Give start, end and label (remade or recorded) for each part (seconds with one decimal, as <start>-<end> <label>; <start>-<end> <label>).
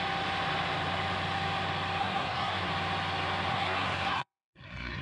0.0-2.0 recorded; 2.0-2.7 remade; 2.7-3.5 recorded; 3.5-5.0 remade